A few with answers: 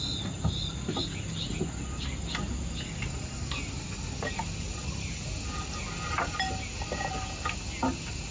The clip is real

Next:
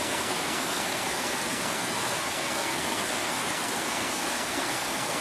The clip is fake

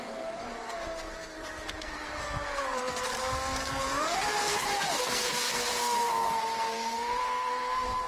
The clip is fake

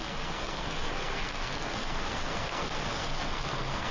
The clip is fake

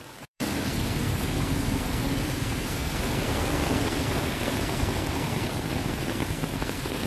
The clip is fake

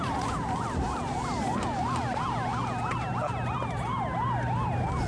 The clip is real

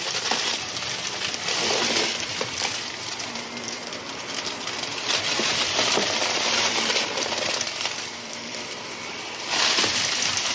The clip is fake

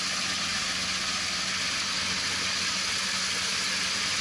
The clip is real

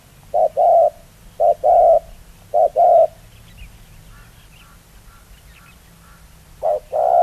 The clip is real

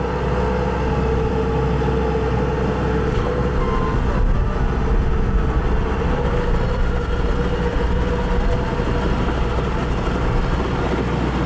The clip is real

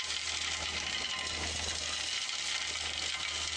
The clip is real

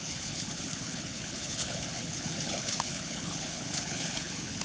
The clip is fake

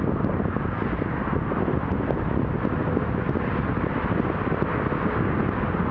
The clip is real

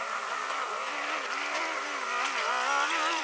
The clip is fake